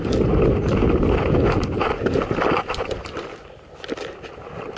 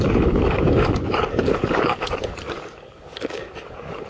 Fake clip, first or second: second